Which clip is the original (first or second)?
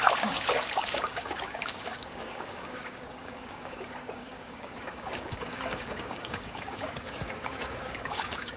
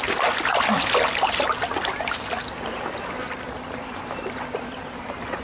second